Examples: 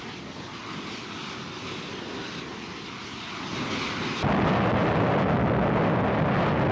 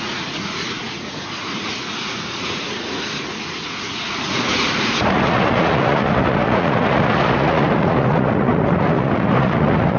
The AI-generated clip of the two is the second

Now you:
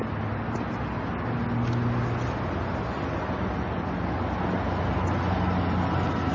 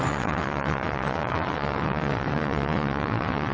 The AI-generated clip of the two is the second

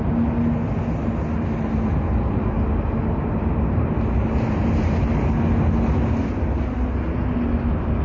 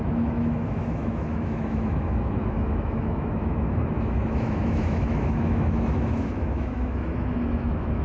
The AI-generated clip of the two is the second